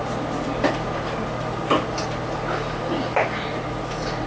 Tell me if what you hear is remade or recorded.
recorded